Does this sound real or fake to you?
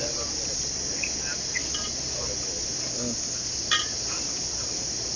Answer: real